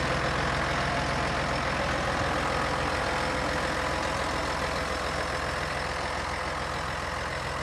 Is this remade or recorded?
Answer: recorded